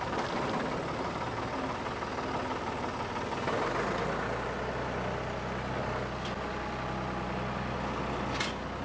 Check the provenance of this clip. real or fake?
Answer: real